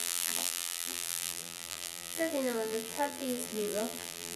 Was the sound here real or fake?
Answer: fake